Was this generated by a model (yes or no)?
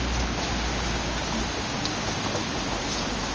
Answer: no